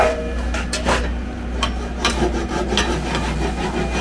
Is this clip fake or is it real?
real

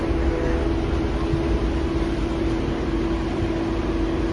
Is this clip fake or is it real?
real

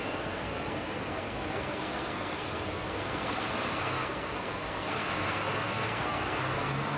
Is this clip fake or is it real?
fake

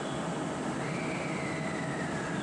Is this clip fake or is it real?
real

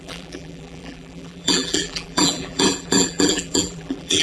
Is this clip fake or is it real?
fake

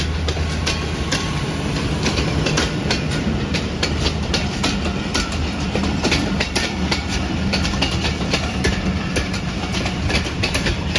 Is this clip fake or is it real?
fake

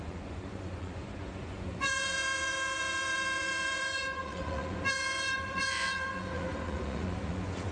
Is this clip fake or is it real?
fake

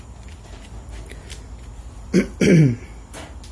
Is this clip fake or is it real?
real